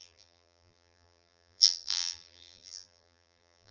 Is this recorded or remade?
remade